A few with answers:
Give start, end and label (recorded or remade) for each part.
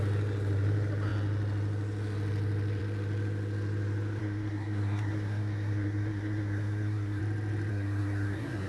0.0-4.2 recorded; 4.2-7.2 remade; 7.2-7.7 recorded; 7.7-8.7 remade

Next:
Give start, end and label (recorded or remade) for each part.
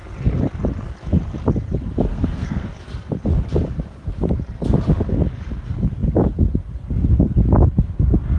0.0-2.1 recorded; 2.1-2.7 remade; 2.7-8.4 recorded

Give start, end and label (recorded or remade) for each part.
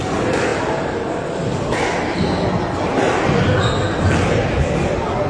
0.0-5.3 recorded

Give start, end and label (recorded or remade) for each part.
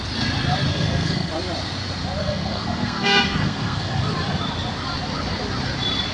0.0-0.7 recorded; 0.7-1.3 remade; 1.3-2.2 recorded; 2.2-4.0 remade; 4.0-6.1 recorded